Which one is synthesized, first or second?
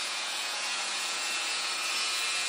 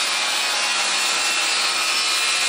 first